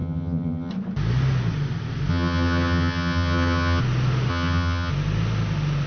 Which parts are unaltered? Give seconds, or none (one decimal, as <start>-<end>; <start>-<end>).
0.7-2.1; 3.8-4.3; 4.9-5.9